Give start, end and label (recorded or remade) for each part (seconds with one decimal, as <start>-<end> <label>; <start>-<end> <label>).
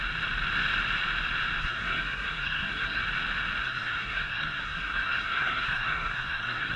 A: 0.0-1.6 recorded; 1.6-3.0 remade; 3.0-3.6 recorded; 3.6-6.8 remade